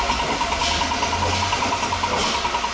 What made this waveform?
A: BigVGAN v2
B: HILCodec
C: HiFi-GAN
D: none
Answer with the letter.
D